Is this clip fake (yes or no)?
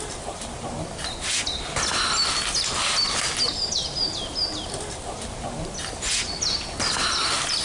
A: no